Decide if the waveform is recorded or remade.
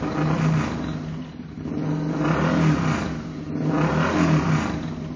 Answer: recorded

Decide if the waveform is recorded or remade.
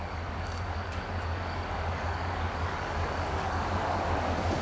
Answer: remade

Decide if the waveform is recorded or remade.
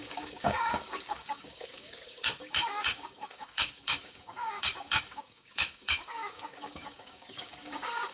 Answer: remade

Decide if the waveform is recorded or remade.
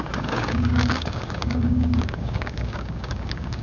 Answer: remade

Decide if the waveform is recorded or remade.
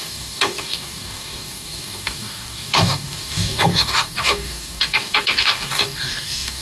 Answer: remade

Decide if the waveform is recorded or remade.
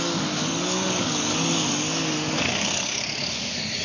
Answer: remade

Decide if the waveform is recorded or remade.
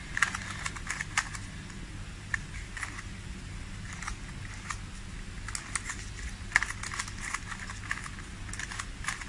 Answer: recorded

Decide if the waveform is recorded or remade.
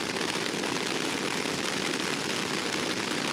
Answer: recorded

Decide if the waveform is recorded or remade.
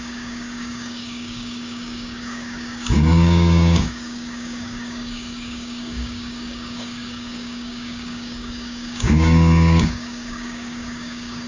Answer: remade